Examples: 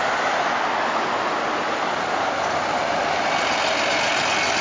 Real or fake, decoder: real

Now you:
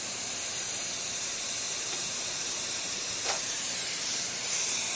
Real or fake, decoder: fake, vocoder, BigVGAN v2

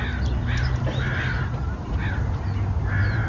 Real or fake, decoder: real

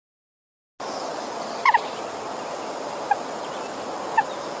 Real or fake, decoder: real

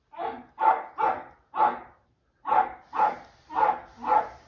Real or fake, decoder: real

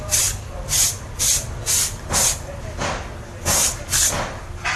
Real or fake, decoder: fake, vocoder, BigVGAN v2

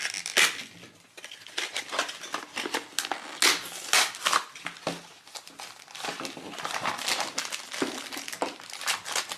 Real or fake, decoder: real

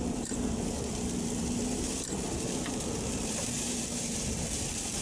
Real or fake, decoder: fake, vocoder, BigVGAN v2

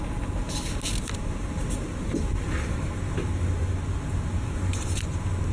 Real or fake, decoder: real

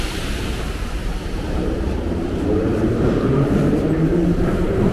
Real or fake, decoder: fake, vocoder, BigVGAN v2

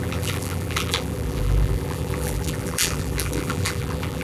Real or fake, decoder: fake, vocoder, BigVGAN v2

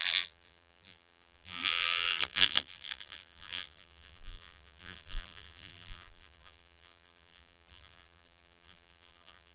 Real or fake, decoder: fake, vocoder, BigVGAN v2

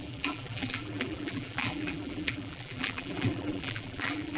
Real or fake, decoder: fake, vocoder, BigVGAN v2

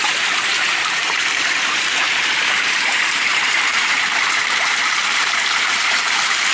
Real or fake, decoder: fake, vocoder, BigVGAN v2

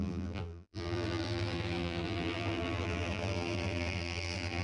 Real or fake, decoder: fake, vocoder, BigVGAN v2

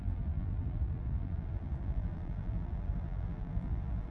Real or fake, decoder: fake, vocoder, BigVGAN v2